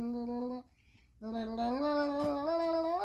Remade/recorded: recorded